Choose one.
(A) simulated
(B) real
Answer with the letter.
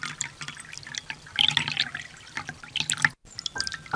B